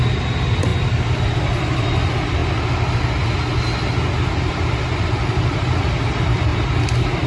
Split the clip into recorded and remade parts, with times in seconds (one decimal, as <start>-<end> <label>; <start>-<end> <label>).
0.0-0.7 remade; 0.7-1.4 recorded; 1.4-2.4 remade; 2.4-4.5 recorded; 4.5-7.3 remade